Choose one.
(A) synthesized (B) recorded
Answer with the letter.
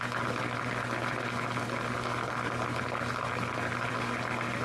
B